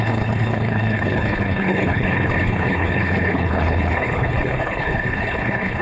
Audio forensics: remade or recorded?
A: remade